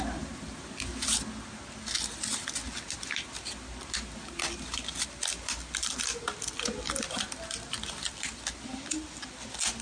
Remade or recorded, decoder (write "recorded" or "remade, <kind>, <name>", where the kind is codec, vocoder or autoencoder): recorded